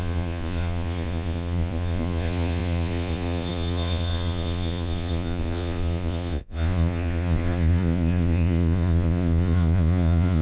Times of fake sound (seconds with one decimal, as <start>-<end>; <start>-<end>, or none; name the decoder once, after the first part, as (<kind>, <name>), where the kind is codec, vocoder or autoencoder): 0.0-10.4 (vocoder, Vocos)